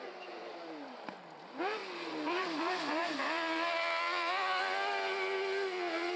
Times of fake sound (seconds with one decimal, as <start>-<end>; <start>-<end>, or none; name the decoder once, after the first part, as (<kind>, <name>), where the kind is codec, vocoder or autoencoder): 1.8-4.6 (vocoder, BigVGAN v2)